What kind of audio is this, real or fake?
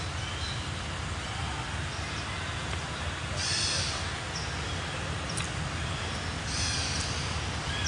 real